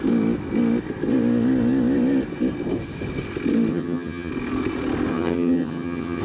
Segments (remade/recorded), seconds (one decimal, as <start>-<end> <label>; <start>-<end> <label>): 0.0-3.7 recorded; 3.7-4.3 remade; 4.3-5.1 recorded; 5.1-6.2 remade